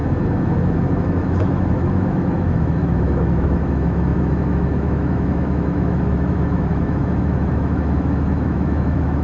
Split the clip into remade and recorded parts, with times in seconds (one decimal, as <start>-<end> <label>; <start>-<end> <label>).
0.0-1.0 recorded; 1.0-9.2 remade